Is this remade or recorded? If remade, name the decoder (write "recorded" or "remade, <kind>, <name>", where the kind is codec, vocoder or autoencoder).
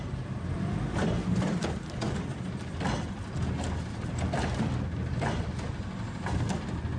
recorded